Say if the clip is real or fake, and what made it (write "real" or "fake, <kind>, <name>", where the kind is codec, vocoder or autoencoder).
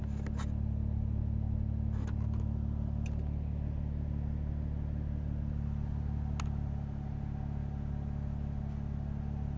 real